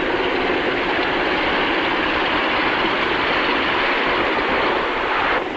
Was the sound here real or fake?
real